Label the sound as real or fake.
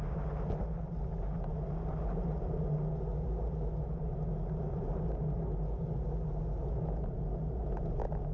real